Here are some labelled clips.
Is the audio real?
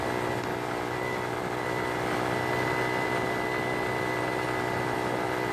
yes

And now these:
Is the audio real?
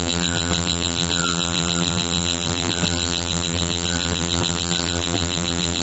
no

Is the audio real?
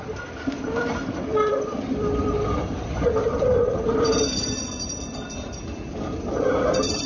no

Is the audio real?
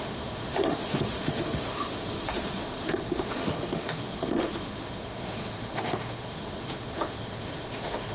no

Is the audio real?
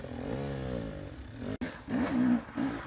yes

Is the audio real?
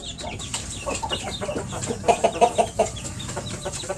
yes